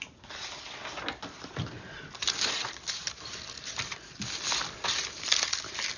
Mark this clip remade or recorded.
recorded